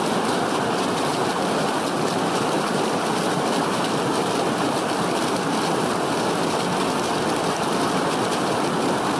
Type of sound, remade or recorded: recorded